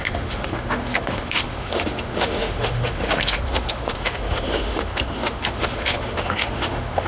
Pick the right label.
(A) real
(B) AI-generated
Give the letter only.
B